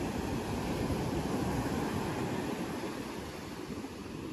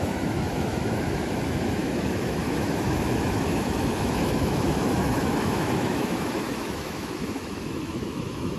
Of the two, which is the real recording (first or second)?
first